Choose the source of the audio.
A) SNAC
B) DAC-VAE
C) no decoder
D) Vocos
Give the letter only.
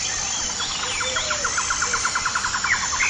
C